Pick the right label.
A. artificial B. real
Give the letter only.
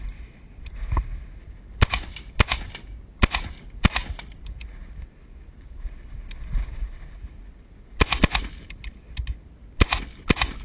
B